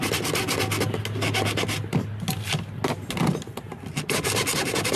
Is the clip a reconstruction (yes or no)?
no